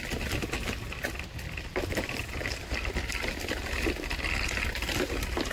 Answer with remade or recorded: recorded